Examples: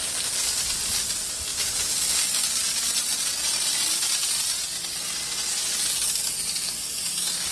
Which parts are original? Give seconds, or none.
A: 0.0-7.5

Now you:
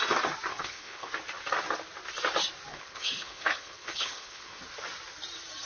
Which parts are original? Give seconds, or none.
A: 0.0-0.5; 1.1-2.7; 4.6-5.7

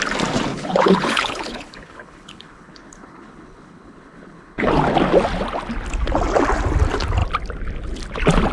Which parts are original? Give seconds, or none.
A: 0.0-0.5; 4.7-8.5

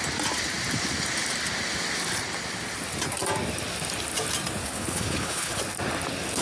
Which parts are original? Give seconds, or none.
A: 0.0-4.6; 5.6-6.4